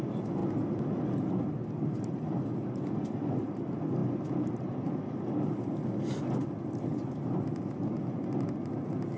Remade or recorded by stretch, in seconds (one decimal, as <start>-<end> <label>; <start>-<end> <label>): 0.0-0.4 recorded; 0.4-1.3 remade; 1.3-4.0 recorded; 4.0-6.2 remade; 6.2-9.2 recorded